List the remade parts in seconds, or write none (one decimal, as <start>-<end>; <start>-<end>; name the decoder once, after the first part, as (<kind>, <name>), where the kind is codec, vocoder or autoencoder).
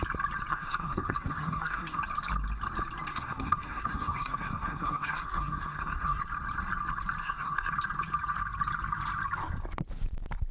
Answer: 0.5-2.0 (codec, SNAC); 3.1-6.2; 7.2-7.7